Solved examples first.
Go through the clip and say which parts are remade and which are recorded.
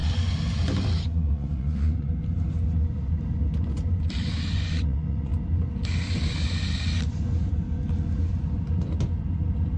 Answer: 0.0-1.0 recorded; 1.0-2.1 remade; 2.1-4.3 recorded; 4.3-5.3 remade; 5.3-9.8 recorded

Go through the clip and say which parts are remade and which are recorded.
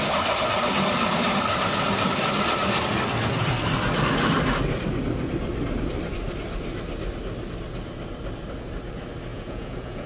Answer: 0.0-9.3 recorded; 9.3-10.1 remade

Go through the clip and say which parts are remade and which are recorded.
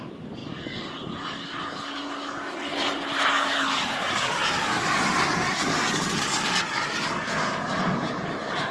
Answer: 0.0-2.7 remade; 2.7-3.3 recorded; 3.3-8.7 remade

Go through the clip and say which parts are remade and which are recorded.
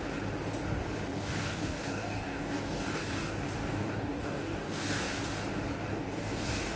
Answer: 0.0-1.1 recorded; 1.1-5.2 remade; 5.2-5.9 recorded; 5.9-6.8 remade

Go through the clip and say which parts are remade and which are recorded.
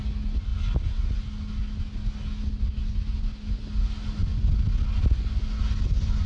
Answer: 0.0-6.3 recorded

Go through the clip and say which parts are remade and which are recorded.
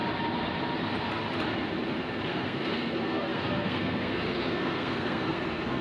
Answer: 0.0-2.3 recorded; 2.3-5.8 remade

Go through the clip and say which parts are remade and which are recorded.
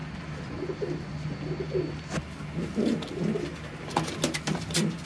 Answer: 0.0-5.1 recorded